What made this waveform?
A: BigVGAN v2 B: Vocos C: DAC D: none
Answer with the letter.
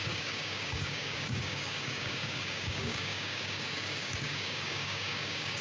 C